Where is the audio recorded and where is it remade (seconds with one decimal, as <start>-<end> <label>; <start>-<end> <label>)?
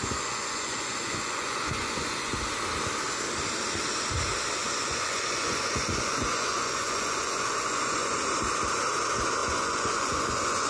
0.0-2.4 remade; 2.4-4.6 recorded; 4.6-8.1 remade; 8.1-9.4 recorded; 9.4-10.7 remade